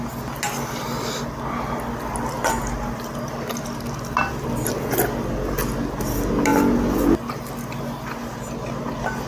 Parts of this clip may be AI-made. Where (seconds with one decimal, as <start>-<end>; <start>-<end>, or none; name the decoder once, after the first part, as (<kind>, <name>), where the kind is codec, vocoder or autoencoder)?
none